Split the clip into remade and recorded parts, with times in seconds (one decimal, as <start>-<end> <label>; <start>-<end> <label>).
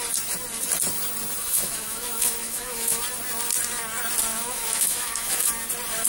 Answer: 0.0-1.4 recorded; 1.4-3.0 remade; 3.0-4.3 recorded; 4.3-5.5 remade; 5.5-6.1 recorded